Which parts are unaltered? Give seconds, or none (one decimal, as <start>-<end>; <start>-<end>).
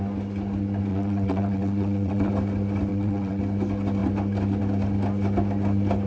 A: 0.0-0.9; 2.3-2.9; 3.4-6.1